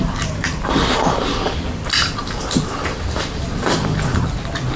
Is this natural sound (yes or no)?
no